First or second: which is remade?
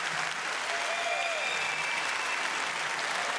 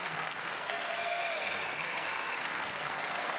second